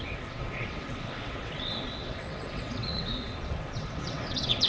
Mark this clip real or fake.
fake